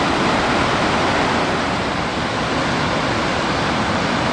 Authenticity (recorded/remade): recorded